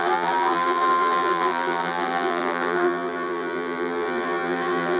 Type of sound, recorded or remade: remade